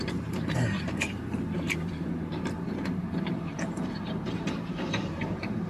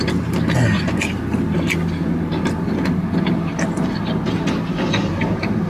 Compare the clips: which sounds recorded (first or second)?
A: second